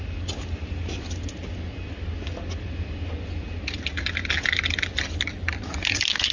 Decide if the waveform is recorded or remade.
recorded